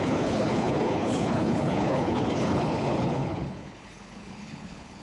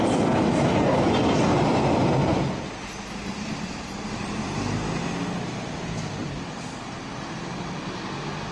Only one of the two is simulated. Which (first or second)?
first